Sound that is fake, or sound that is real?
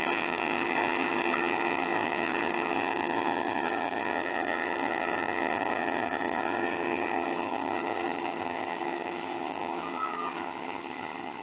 fake